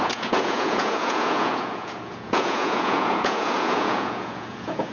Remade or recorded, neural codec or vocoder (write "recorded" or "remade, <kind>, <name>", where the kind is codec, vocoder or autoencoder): remade, vocoder, Vocos